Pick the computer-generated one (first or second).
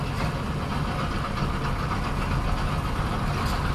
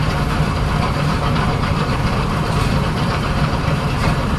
second